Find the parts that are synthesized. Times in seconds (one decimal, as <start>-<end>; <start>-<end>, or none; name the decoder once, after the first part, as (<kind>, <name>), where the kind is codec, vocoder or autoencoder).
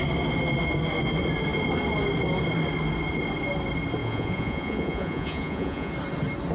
4.0-5.9 (vocoder, Vocos)